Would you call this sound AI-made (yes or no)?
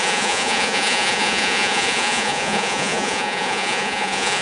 yes